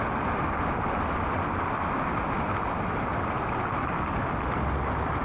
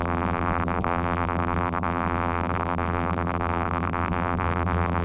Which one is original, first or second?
first